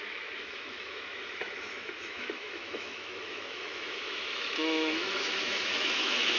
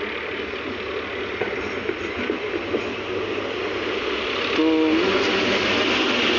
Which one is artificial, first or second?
first